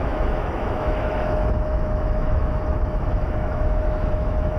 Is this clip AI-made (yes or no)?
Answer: yes